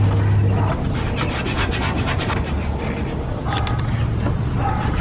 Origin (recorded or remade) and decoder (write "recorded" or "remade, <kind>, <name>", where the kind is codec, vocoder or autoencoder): recorded